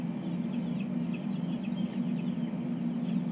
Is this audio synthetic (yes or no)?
no